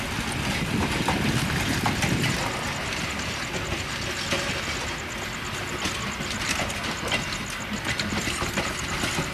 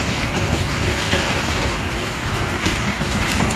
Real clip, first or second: first